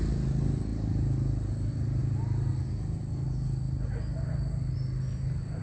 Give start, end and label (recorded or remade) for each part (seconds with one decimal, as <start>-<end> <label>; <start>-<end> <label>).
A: 0.0-5.6 recorded